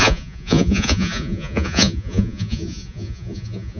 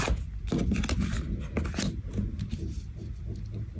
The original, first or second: second